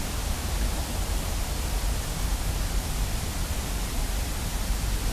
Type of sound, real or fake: fake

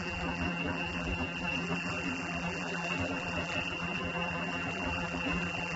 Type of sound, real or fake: fake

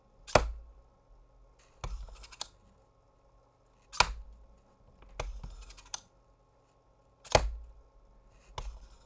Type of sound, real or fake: real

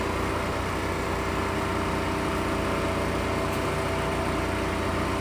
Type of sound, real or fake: real